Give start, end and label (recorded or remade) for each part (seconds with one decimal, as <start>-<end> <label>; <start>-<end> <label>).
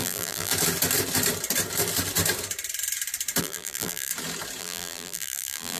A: 0.0-0.5 remade; 0.5-3.4 recorded; 3.4-4.1 remade; 4.1-4.6 recorded; 4.6-5.8 remade